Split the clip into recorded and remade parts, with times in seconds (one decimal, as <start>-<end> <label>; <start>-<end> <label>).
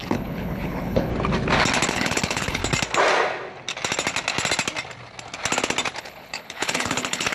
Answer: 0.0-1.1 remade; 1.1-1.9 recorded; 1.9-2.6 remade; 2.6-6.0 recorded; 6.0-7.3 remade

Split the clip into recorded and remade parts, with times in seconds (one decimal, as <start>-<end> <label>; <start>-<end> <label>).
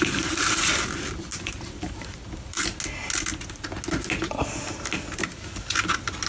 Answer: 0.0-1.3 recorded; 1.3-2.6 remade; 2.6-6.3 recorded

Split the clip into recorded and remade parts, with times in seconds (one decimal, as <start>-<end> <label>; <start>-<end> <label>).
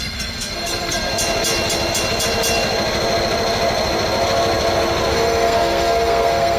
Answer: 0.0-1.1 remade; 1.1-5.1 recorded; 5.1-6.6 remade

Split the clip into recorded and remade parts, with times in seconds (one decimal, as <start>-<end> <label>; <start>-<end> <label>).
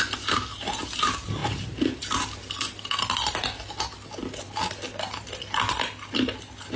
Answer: 0.0-6.8 recorded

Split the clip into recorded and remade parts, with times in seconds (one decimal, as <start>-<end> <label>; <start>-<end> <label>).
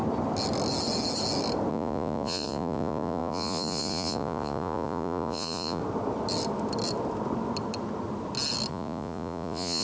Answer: 0.0-1.7 recorded; 1.7-5.8 remade; 5.8-8.7 recorded; 8.7-9.8 remade